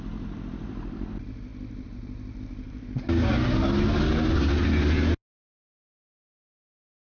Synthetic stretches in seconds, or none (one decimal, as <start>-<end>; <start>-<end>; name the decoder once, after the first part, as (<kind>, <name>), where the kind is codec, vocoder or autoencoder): none